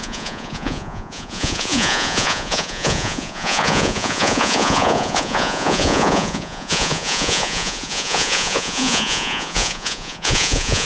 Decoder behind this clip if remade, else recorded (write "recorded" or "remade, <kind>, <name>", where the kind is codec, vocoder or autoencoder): remade, vocoder, Vocos